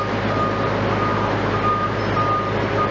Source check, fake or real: real